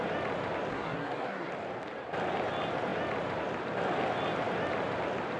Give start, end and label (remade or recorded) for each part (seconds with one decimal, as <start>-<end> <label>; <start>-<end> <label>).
0.0-0.7 recorded; 0.7-1.5 remade; 1.5-5.4 recorded